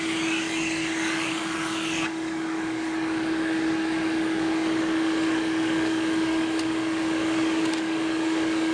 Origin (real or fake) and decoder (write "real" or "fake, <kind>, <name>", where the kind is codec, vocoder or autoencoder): fake, codec, DAC